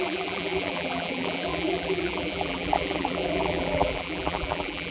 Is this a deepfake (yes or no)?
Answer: yes